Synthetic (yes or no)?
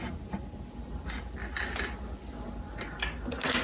no